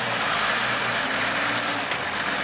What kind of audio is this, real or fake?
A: real